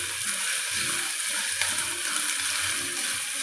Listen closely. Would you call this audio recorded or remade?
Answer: recorded